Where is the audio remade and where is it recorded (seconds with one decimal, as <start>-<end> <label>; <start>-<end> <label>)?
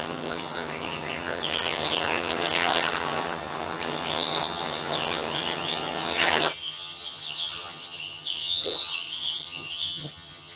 0.0-10.6 remade